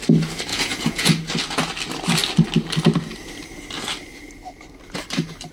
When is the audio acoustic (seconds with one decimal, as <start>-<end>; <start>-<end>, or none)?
0.0-0.5; 1.1-5.5